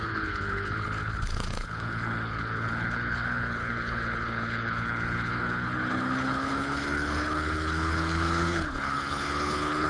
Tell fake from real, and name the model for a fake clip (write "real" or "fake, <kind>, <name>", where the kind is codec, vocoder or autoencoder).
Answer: fake, codec, HILCodec